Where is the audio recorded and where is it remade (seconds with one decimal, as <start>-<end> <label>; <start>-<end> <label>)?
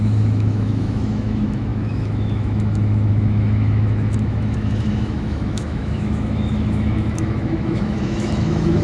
0.0-8.8 remade